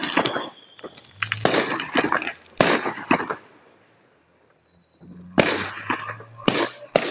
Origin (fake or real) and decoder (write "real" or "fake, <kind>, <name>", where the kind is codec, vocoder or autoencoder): real